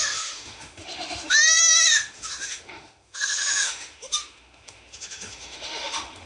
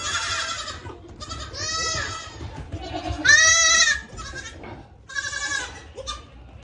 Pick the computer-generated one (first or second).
first